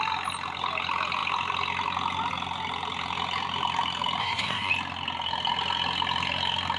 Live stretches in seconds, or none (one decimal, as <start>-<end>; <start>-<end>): 0.0-4.2; 4.7-6.8